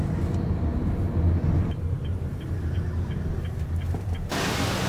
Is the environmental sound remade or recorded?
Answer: recorded